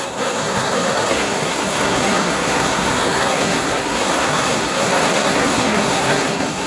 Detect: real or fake fake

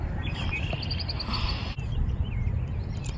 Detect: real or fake fake